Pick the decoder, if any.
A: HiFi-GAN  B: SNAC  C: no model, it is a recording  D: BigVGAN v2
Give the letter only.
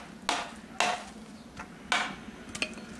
C